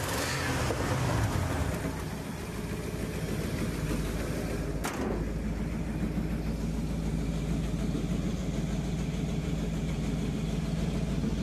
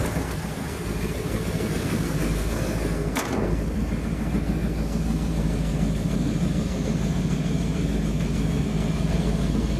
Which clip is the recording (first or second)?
first